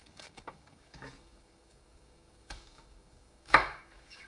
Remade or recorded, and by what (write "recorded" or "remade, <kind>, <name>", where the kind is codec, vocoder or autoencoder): remade, codec, DAC